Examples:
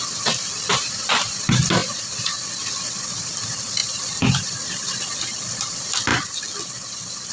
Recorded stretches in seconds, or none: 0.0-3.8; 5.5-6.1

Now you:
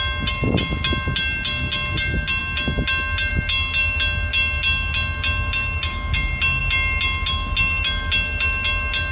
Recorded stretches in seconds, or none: 0.0-9.1

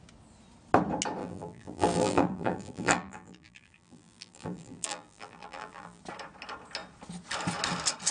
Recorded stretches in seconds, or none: 0.0-1.2; 6.0-8.1

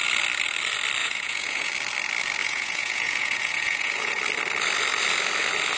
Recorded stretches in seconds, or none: 0.0-1.0; 1.7-2.4; 4.2-5.8

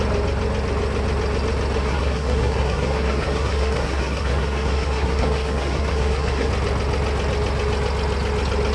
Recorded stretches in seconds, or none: 0.0-1.8; 6.5-8.7

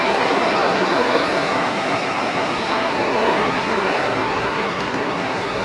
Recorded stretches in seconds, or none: none

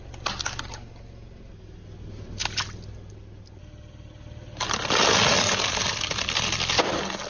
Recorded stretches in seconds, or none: 0.0-7.3